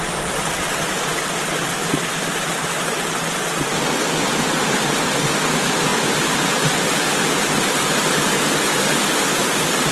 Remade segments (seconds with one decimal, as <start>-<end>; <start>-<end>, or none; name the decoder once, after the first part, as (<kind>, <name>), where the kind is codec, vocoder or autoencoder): none